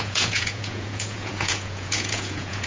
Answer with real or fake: fake